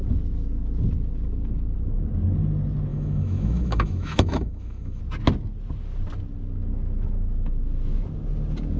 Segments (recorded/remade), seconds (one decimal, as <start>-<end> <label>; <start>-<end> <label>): 0.0-2.9 recorded; 2.9-5.0 remade; 5.0-8.8 recorded